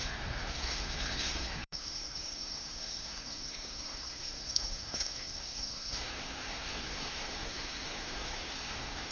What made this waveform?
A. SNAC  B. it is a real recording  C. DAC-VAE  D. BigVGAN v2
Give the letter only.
A